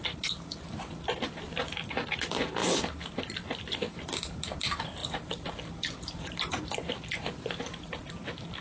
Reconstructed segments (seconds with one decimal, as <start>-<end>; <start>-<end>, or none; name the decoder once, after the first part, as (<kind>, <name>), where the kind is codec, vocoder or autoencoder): none